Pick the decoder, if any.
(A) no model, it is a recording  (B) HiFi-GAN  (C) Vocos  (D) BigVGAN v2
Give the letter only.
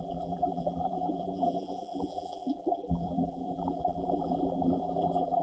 D